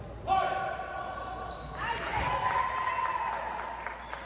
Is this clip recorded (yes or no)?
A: yes